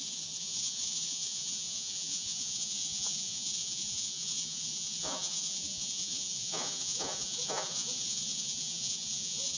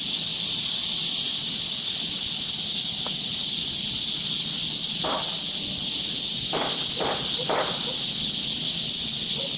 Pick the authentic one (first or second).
second